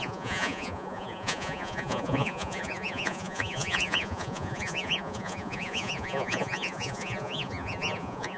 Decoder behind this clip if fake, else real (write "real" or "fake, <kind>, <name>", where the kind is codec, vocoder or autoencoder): fake, vocoder, Vocos